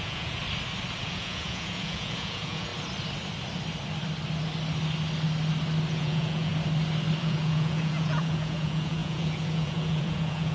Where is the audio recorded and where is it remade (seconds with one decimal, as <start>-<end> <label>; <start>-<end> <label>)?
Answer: 0.0-0.4 remade; 0.4-1.0 recorded; 1.0-2.7 remade; 2.7-5.9 recorded; 5.9-6.5 remade; 6.5-7.2 recorded; 7.2-10.5 remade